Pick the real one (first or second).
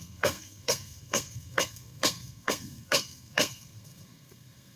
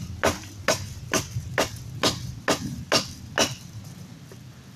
second